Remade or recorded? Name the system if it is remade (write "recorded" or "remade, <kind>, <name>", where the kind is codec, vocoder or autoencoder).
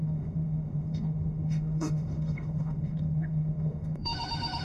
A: remade, autoencoder, DAC-VAE